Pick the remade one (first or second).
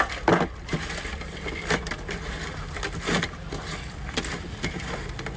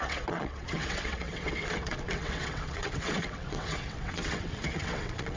second